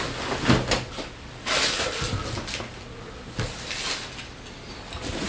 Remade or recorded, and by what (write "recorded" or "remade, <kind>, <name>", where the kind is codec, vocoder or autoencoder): recorded